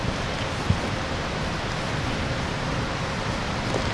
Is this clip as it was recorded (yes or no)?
yes